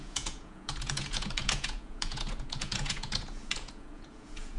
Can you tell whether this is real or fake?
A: fake